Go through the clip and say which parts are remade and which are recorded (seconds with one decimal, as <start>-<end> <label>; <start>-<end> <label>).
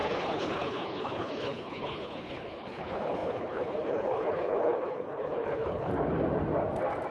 0.0-5.9 remade; 5.9-7.1 recorded